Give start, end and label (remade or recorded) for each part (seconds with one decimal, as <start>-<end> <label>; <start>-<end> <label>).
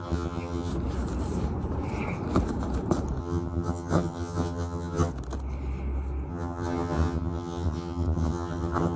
0.0-0.7 remade; 0.7-3.2 recorded; 3.2-5.1 remade; 5.1-6.3 recorded; 6.3-9.0 remade